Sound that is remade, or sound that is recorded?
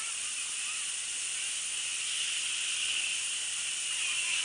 recorded